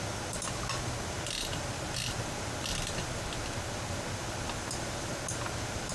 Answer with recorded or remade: recorded